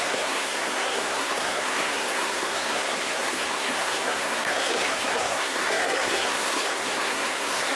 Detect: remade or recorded remade